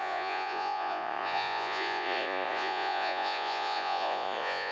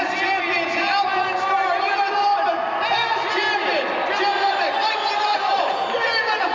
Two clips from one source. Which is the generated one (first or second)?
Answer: first